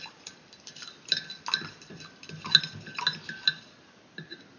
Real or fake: real